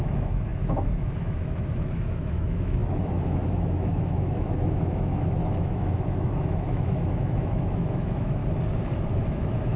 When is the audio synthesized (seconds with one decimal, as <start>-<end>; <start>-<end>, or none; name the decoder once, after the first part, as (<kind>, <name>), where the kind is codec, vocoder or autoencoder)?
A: 0.0-8.4 (autoencoder, DAC-VAE); 9.1-9.8